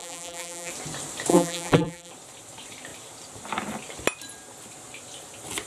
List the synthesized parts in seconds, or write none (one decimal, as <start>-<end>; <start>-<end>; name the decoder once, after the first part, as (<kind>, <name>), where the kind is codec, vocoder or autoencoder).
0.0-0.7 (vocoder, BigVGAN v2); 1.3-2.1